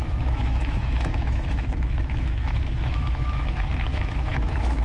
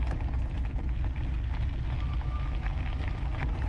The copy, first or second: first